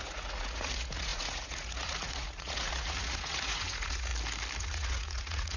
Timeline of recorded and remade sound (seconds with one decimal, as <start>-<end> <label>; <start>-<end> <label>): 0.0-4.1 remade; 4.1-4.6 recorded; 4.6-5.6 remade